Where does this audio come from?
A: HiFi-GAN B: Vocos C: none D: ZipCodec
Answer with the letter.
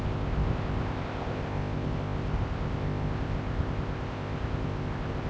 D